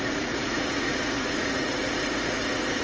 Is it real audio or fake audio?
fake